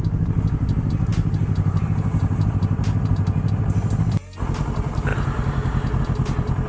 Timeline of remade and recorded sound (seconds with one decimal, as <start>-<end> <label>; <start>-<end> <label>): 0.0-6.7 recorded